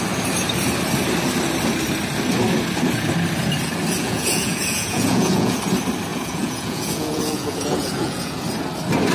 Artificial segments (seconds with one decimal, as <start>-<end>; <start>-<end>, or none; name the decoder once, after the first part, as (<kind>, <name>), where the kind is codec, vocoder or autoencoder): 4.0-5.6 (vocoder, Vocos); 6.1-8.4